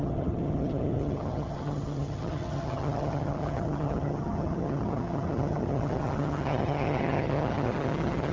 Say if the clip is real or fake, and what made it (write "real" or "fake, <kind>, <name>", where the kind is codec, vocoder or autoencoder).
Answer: fake, vocoder, HiFi-GAN